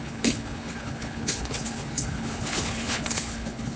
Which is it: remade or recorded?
remade